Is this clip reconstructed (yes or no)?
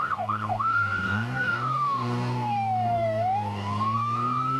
yes